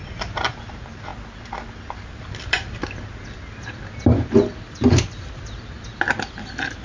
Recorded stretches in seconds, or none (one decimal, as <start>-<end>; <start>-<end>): 0.0-6.8

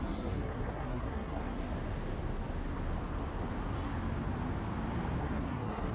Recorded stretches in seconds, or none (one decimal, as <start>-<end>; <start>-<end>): 1.7-5.2

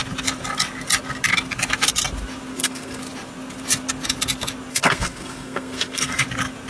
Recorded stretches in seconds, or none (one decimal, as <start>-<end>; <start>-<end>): 0.0-2.5; 3.0-4.7; 6.2-6.7

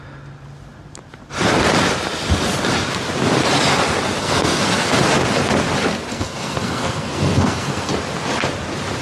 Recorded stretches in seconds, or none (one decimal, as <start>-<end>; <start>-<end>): 0.0-4.2; 4.9-6.1; 7.9-9.0

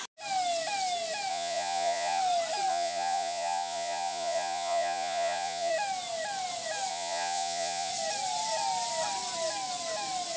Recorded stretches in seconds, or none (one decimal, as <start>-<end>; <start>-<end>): 0.0-1.3; 2.2-2.7; 5.7-6.9; 7.9-10.4

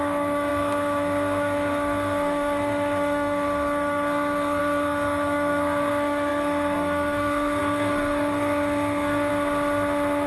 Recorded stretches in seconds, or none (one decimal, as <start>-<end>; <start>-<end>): 9.3-10.3

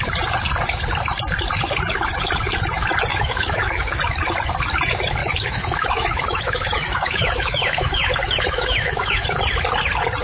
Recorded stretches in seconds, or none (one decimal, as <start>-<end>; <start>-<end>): 0.0-3.1; 4.0-5.2; 9.4-10.2